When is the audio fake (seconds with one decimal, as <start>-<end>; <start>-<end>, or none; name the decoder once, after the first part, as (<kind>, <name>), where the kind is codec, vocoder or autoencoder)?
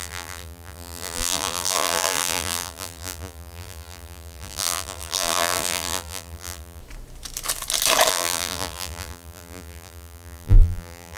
0.0-6.8 (vocoder, BigVGAN v2); 8.1-11.2